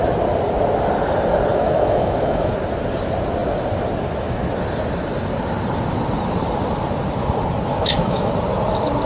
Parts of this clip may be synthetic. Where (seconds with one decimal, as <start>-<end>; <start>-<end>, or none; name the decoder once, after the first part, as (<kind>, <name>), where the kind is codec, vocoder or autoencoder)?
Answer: 1.5-2.5 (autoencoder, DAC-VAE); 7.7-8.3